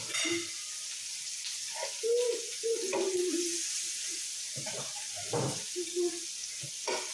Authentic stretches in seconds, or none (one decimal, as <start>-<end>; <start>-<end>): 0.0-3.6; 5.6-7.1